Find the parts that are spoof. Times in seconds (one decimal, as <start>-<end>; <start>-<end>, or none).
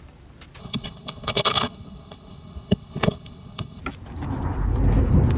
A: 0.6-3.8